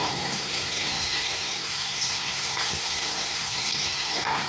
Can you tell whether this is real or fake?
fake